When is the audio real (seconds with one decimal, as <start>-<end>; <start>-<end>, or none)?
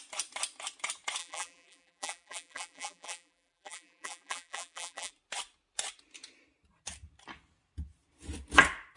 0.0-1.2; 5.1-9.0